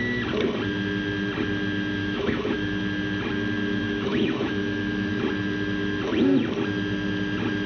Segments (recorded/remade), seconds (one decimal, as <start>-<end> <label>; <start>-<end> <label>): 0.0-2.0 recorded; 2.0-2.8 remade; 2.8-3.8 recorded; 3.8-5.1 remade; 5.1-7.7 recorded